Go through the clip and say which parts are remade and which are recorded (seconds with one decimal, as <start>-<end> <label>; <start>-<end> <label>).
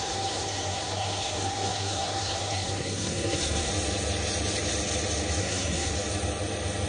0.0-3.7 remade; 3.7-5.4 recorded; 5.4-5.9 remade; 5.9-6.9 recorded